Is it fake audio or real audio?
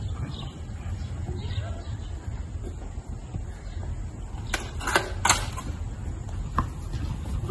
real